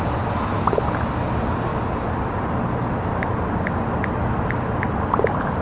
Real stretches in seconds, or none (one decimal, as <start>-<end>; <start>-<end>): 0.0-5.6